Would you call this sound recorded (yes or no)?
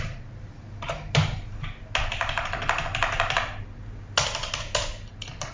yes